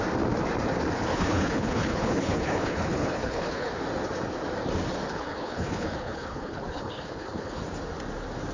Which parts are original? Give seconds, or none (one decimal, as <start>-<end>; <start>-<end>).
0.0-1.1; 3.7-5.1; 7.6-8.5